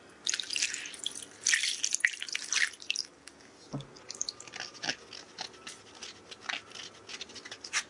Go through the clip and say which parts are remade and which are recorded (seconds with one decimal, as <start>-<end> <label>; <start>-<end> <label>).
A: 0.0-7.9 recorded